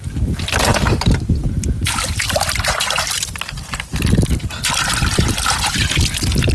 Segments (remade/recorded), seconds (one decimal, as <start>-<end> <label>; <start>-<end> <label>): 0.0-6.5 recorded